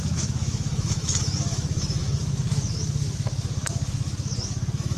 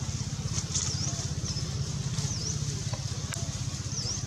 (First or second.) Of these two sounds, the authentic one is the second